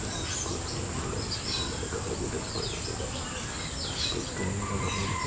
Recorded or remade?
recorded